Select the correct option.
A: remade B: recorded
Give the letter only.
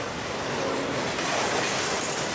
A